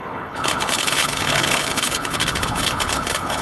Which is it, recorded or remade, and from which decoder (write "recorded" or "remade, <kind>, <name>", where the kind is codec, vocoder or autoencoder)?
remade, codec, HILCodec